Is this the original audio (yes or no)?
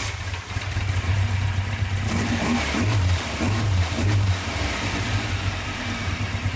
no